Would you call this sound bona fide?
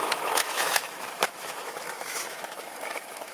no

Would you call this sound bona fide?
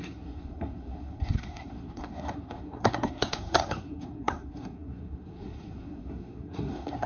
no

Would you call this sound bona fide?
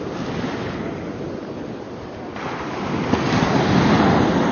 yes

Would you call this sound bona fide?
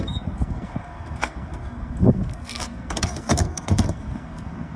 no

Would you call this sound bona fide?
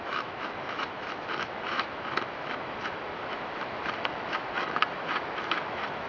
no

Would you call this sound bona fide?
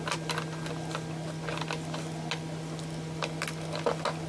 yes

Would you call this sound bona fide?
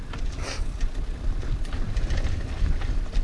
yes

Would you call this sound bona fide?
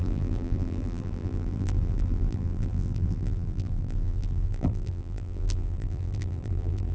no